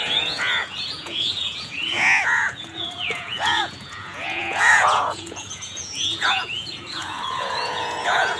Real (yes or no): no